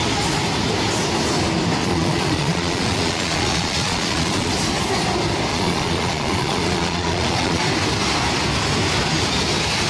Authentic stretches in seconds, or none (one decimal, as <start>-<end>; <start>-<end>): 0.0-1.8; 4.5-5.5; 7.6-9.9